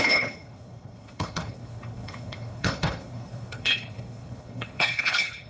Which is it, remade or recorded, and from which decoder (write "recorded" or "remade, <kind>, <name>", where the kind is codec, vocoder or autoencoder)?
remade, codec, HILCodec